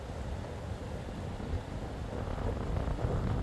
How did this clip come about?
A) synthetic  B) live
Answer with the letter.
B